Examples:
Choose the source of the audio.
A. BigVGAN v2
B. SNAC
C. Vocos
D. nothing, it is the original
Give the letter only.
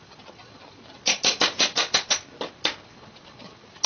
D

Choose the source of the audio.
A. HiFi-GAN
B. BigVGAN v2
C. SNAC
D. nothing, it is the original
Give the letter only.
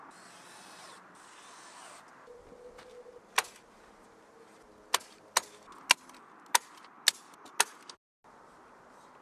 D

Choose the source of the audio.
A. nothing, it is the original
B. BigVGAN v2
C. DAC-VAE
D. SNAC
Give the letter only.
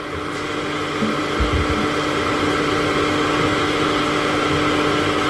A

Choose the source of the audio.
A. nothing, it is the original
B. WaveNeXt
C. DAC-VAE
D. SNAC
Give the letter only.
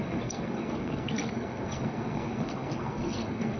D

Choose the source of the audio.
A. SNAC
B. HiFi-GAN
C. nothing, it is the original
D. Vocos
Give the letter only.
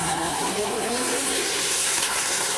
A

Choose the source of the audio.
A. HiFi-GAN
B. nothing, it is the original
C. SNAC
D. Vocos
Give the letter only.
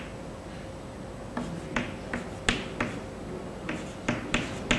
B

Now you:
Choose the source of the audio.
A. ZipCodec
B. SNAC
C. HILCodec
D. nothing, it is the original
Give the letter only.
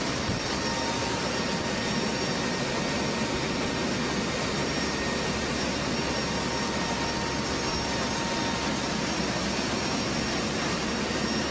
D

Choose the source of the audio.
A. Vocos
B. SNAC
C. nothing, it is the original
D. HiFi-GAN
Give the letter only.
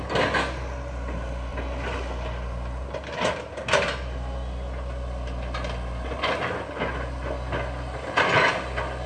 C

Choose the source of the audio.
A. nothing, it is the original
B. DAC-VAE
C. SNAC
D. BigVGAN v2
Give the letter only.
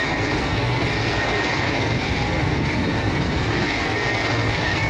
C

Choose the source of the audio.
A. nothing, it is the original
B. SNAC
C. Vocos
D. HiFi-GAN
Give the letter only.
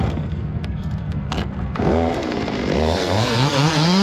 B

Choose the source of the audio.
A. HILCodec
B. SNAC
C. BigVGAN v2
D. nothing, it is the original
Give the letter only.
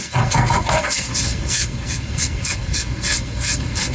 B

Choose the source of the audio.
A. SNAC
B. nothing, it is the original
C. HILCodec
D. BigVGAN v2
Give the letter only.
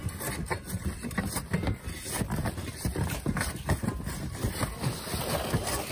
B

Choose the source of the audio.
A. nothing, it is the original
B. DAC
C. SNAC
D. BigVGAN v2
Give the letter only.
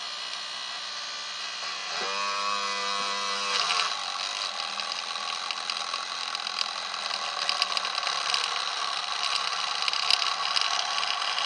A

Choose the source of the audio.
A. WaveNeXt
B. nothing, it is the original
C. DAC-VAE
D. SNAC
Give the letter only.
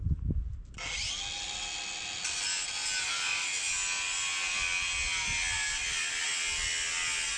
B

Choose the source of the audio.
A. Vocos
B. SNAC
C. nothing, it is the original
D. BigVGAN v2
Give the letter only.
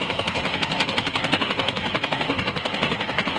B